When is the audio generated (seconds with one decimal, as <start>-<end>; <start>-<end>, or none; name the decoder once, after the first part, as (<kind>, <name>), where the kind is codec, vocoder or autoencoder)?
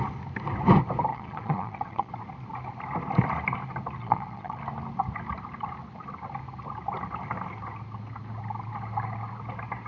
1.1-2.1 (vocoder, Vocos); 4.0-4.6